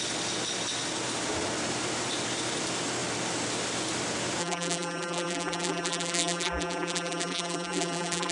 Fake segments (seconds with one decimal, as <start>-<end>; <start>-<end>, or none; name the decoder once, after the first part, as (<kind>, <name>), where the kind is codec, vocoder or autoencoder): 4.4-8.3 (vocoder, BigVGAN v2)